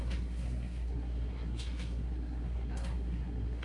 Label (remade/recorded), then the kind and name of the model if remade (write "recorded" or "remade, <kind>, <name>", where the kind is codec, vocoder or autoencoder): remade, codec, SNAC